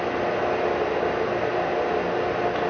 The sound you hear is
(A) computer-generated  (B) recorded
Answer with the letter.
B